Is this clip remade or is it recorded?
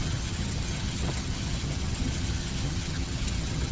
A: remade